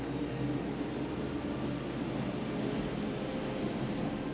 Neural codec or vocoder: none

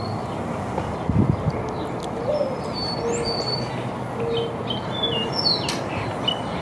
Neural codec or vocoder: none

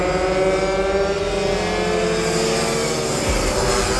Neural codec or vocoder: none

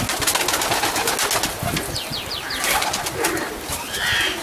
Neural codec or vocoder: none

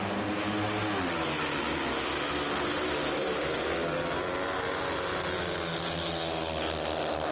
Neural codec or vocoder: none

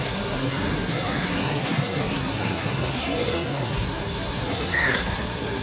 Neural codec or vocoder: codec, SNAC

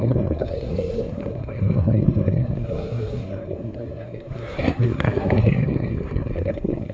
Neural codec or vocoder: codec, SNAC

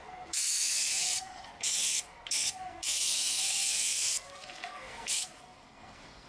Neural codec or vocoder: codec, SNAC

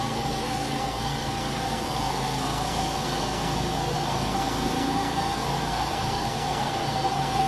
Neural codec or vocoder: codec, SNAC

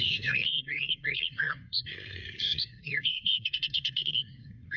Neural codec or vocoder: codec, SNAC